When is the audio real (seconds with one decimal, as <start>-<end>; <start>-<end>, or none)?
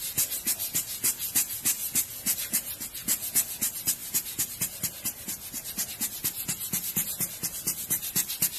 0.0-8.6